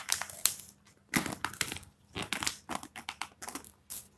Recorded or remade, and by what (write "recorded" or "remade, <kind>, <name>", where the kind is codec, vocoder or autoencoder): recorded